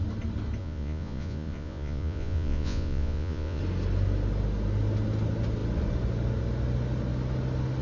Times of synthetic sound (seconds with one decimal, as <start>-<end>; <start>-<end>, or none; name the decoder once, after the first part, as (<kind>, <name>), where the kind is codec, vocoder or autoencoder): 0.6-3.6 (vocoder, Vocos)